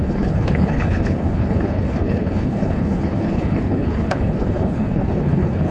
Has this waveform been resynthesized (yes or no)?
yes